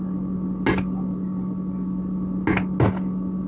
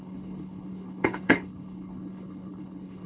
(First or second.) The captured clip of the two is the first